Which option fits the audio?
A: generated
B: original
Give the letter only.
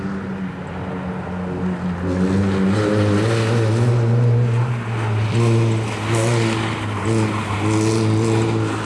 B